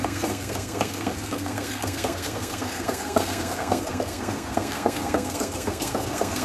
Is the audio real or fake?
fake